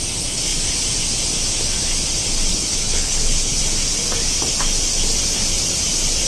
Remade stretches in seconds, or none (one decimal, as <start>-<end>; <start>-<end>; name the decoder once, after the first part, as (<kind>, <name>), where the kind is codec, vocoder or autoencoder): 2.5-3.6 (codec, HILCodec)